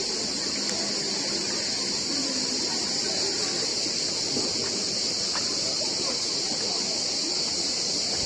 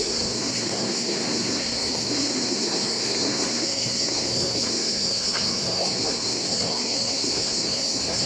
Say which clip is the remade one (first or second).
second